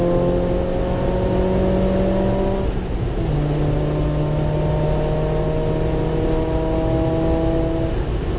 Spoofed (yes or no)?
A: no